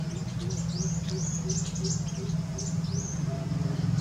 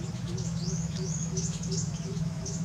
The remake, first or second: second